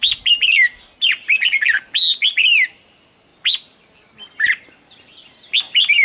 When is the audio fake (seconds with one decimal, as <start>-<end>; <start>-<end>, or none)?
none